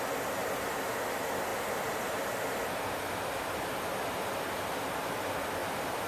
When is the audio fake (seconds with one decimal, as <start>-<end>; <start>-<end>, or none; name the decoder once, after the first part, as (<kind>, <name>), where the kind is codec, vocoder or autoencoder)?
5.6-6.1 (vocoder, BigVGAN v2)